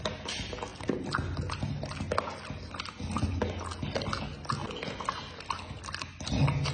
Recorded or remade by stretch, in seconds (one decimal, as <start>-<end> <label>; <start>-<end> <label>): 0.0-6.7 recorded

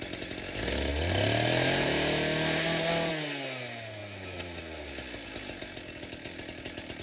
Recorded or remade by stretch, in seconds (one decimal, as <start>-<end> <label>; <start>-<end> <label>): 0.0-7.0 recorded

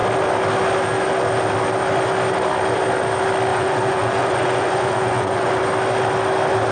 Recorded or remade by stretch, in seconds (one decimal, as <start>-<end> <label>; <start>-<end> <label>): 0.0-3.5 recorded; 3.5-5.6 remade; 5.6-6.7 recorded

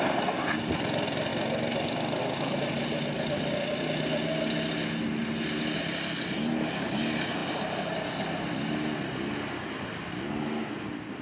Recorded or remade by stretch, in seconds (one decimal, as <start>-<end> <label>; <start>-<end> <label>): 0.0-11.2 recorded